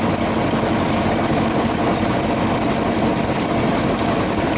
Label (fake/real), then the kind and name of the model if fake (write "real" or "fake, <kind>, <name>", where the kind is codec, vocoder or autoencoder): real